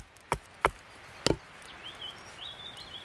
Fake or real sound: real